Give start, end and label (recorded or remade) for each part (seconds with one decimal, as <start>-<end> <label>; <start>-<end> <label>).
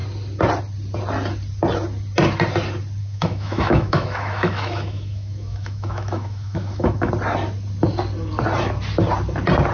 0.0-3.0 recorded; 3.0-7.1 remade; 7.1-9.7 recorded